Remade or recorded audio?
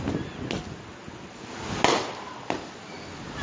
recorded